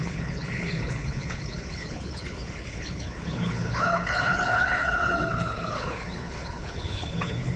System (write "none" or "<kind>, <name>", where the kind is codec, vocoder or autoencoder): codec, HILCodec